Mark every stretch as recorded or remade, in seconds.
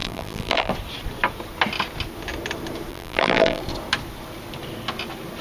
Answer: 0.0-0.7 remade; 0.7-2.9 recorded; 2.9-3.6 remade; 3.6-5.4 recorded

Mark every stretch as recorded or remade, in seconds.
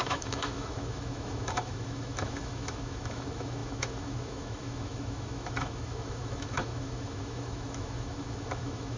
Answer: 0.0-9.0 remade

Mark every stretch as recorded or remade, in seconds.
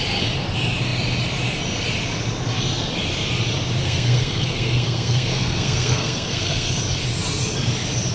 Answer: 0.0-3.8 recorded; 3.8-6.8 remade; 6.8-8.1 recorded